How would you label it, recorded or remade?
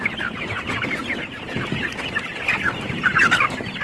recorded